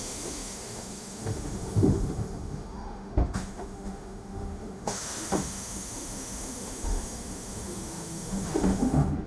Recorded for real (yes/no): no